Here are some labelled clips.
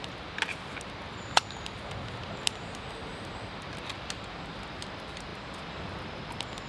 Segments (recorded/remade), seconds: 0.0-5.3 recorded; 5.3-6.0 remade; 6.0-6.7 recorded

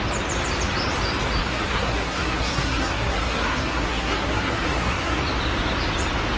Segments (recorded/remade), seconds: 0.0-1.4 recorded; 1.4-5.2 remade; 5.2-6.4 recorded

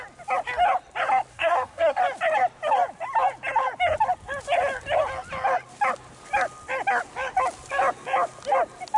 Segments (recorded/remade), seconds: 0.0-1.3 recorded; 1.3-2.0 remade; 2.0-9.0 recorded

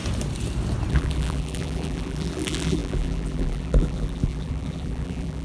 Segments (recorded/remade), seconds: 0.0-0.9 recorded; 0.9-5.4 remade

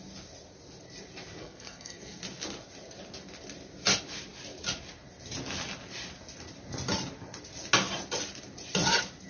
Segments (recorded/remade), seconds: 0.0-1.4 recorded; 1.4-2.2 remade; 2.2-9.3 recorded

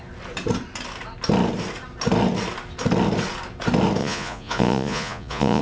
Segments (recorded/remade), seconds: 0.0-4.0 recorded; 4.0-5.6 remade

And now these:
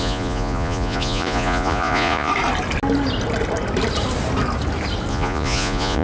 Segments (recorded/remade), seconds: 0.0-2.3 remade; 2.3-5.1 recorded; 5.1-6.0 remade

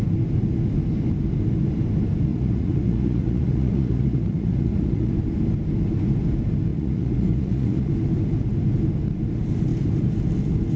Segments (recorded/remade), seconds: 0.0-2.3 recorded; 2.3-5.1 remade; 5.1-6.7 recorded; 6.7-7.9 remade; 7.9-10.8 recorded